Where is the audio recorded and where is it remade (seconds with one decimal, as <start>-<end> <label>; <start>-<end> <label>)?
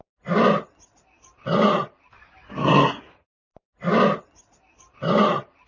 0.0-1.8 recorded; 1.8-2.4 remade; 2.4-5.7 recorded